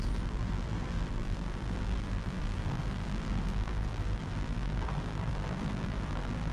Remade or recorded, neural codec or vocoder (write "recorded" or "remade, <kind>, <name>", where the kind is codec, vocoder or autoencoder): remade, vocoder, BigVGAN v2